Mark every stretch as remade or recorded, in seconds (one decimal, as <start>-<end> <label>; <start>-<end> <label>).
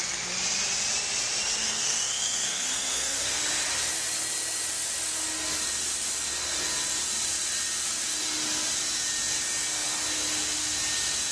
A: 0.0-1.6 recorded; 1.6-3.4 remade; 3.4-11.3 recorded